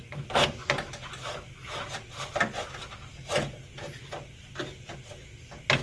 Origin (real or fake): real